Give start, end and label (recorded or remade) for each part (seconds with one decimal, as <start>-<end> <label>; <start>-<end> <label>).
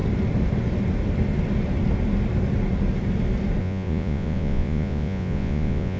0.0-3.6 recorded; 3.6-6.0 remade